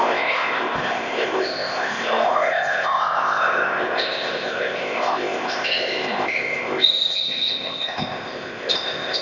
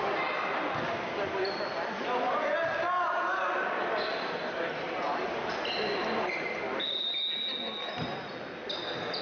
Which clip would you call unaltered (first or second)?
second